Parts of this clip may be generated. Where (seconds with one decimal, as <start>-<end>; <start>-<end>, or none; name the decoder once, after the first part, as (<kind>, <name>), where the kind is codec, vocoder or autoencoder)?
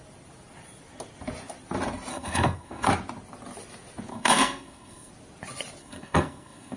2.1-2.9 (codec, SNAC); 4.1-5.1; 5.8-6.8